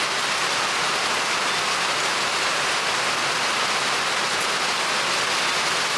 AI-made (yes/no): no